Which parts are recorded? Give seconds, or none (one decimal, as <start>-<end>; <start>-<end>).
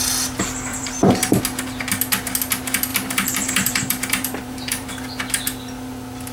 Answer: 0.0-0.7; 1.4-2.9; 4.9-6.3